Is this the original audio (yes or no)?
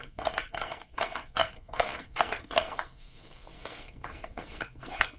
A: no